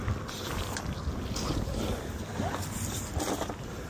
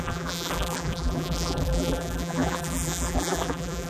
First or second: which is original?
first